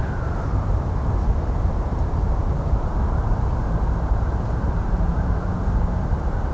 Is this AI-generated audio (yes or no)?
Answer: yes